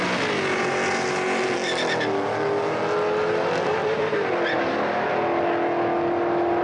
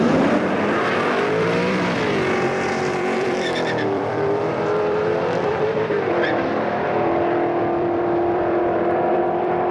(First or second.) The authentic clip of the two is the first